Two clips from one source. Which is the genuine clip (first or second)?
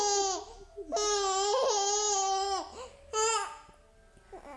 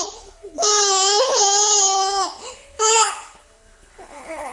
first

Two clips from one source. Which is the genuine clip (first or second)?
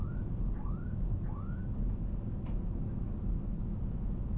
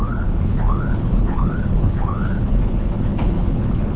first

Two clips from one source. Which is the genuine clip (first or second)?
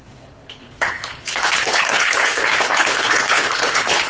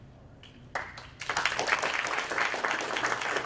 second